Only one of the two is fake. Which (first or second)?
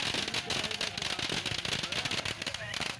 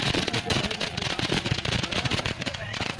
second